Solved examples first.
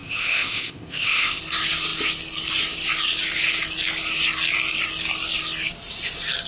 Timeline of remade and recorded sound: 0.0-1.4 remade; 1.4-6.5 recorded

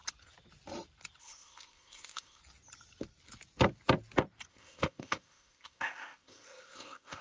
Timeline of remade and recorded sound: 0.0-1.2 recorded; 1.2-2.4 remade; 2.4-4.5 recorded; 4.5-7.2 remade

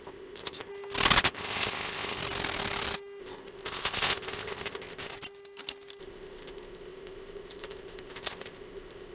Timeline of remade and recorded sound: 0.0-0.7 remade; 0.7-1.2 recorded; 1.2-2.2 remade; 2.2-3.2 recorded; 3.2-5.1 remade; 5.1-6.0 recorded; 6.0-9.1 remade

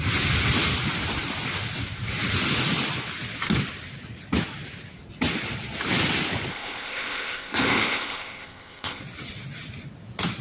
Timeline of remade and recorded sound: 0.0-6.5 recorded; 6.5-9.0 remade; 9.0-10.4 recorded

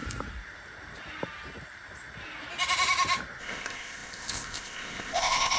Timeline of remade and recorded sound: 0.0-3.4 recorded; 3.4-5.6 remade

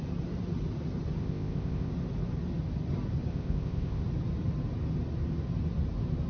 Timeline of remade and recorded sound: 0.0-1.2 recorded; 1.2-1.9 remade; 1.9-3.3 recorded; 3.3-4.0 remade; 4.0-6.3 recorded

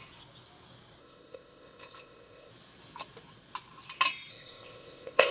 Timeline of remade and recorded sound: 0.0-1.0 recorded; 1.0-2.5 remade; 2.5-4.3 recorded; 4.3-5.3 remade